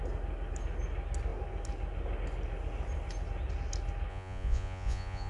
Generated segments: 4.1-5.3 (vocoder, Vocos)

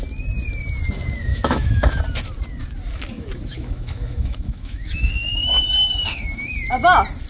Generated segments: 1.3-2.0 (autoencoder, DAC-VAE); 3.5-6.5

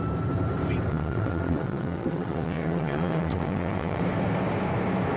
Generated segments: 0.9-4.0 (vocoder, WaveNeXt)

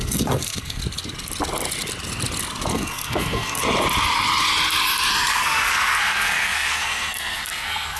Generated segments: 0.0-0.8 (codec, SNAC); 2.7-3.6; 5.3-8.0

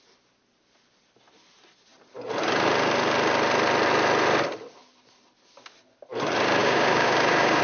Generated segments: 6.6-7.6 (codec, DAC)

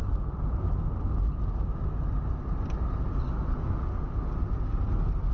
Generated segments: none